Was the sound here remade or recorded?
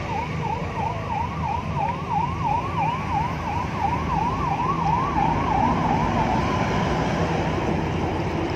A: remade